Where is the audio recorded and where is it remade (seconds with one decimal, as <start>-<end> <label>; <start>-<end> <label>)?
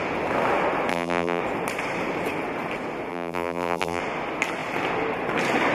0.0-0.9 recorded; 0.9-1.4 remade; 1.4-3.1 recorded; 3.1-4.0 remade; 4.0-5.7 recorded